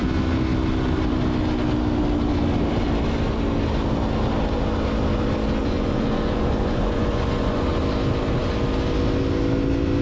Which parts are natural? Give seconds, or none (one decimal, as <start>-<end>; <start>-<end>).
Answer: 0.0-5.6; 7.8-10.0